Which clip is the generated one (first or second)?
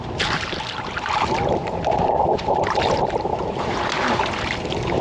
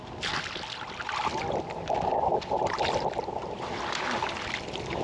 first